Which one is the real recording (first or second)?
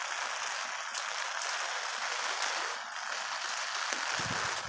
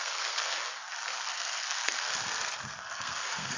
first